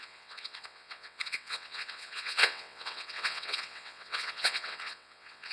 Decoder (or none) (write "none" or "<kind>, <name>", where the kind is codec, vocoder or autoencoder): vocoder, WaveNeXt